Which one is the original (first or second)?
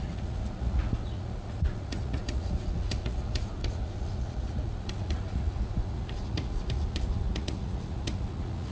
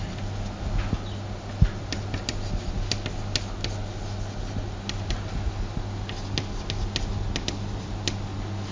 second